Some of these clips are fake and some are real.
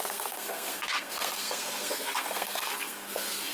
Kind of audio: fake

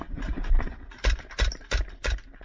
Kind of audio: real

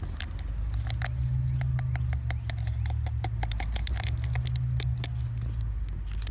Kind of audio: real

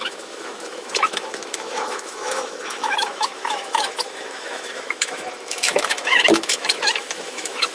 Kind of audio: fake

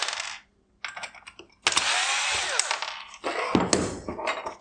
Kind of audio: real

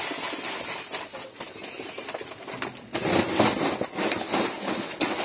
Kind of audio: real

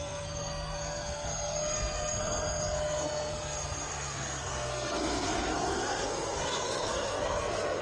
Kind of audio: fake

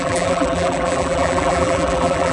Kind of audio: fake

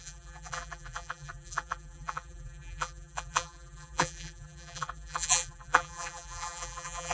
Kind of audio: fake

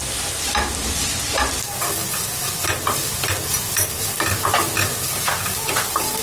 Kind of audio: real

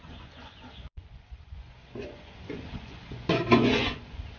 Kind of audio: fake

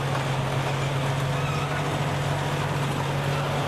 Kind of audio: real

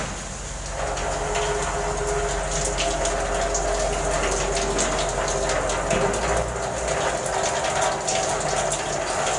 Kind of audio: real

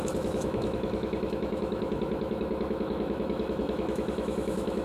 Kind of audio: fake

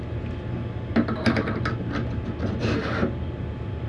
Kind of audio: real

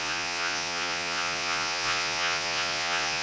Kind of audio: fake